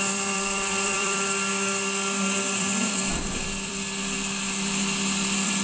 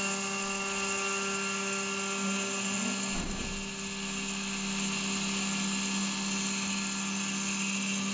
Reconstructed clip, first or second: first